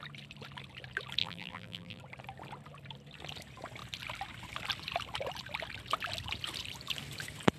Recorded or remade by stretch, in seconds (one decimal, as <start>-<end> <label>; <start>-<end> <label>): 0.0-1.2 recorded; 1.2-2.0 remade; 2.0-7.6 recorded